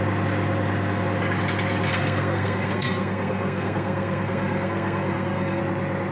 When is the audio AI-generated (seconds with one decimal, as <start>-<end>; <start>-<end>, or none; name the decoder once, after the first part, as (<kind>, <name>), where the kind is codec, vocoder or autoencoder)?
1.9-5.6 (codec, SNAC)